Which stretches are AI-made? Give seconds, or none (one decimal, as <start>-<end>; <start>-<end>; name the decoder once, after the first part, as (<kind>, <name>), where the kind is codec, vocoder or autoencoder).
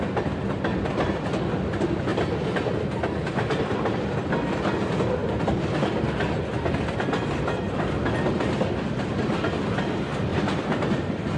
2.1-3.5 (vocoder, BigVGAN v2); 5.2-6.5; 10.3-11.4